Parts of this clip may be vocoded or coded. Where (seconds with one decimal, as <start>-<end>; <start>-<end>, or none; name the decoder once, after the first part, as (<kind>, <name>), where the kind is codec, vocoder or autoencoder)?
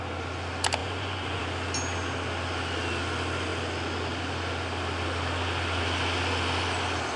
0.8-1.4 (vocoder, Vocos)